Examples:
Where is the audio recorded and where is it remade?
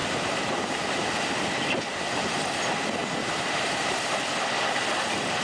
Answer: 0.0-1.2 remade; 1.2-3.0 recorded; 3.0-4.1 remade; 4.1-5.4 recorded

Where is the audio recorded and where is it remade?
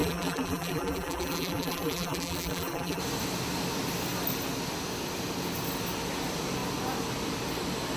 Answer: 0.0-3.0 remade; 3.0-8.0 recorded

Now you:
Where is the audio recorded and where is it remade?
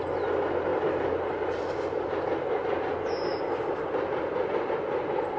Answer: 0.0-0.7 recorded; 0.7-2.1 remade; 2.1-3.3 recorded; 3.3-3.8 remade; 3.8-5.4 recorded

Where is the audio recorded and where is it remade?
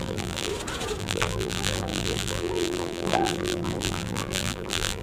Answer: 0.0-0.5 remade; 0.5-1.0 recorded; 1.0-5.0 remade